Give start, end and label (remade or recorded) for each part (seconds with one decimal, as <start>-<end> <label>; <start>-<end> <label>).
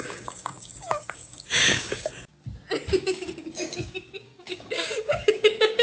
0.0-2.3 remade; 2.3-3.0 recorded; 3.0-5.8 remade